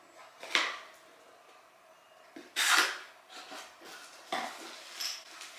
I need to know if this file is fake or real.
real